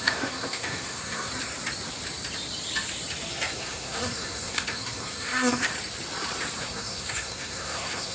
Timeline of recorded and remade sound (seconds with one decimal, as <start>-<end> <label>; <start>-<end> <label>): 0.0-1.3 remade; 1.3-3.3 recorded; 3.3-5.7 remade; 5.7-6.6 recorded; 6.6-8.1 remade